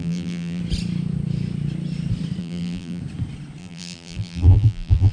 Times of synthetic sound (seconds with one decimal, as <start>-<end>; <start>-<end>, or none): 0.0-0.6; 2.4-3.0; 3.6-5.1